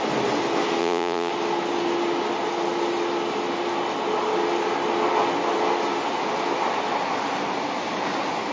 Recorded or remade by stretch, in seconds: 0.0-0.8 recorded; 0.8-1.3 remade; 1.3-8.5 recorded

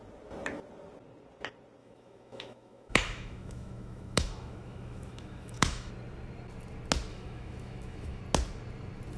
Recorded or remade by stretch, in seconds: 0.0-1.8 recorded; 1.8-5.9 remade; 5.9-7.1 recorded; 7.1-8.2 remade; 8.2-9.2 recorded